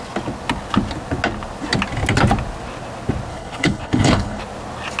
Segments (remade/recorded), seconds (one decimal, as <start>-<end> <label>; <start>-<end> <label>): 0.0-3.3 recorded; 3.3-4.4 remade; 4.4-5.0 recorded